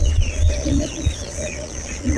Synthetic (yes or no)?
yes